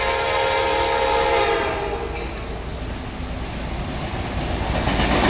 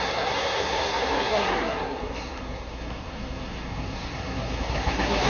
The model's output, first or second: second